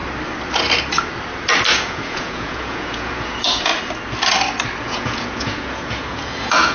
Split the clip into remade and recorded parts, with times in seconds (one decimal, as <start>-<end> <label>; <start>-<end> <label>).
0.0-1.7 recorded; 1.7-3.7 remade; 3.7-4.8 recorded; 4.8-6.7 remade